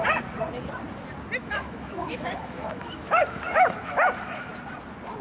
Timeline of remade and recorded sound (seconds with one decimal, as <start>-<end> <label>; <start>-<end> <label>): 0.0-1.4 recorded; 1.4-4.5 remade; 4.5-5.2 recorded